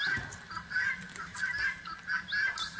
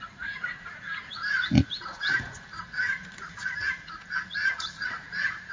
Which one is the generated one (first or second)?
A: second